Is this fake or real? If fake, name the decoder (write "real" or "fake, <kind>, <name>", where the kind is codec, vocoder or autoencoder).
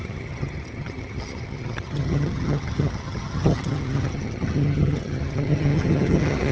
fake, vocoder, HiFi-GAN